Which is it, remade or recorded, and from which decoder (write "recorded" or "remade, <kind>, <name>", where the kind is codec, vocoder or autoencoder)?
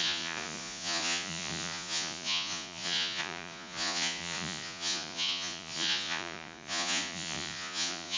remade, vocoder, Vocos